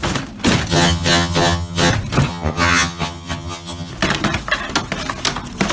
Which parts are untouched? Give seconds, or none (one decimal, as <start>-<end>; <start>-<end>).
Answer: 0.0-0.7; 1.9-2.3; 3.9-5.7